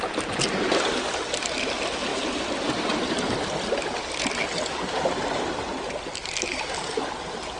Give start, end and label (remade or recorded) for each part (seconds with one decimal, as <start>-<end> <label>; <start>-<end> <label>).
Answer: 0.0-7.6 recorded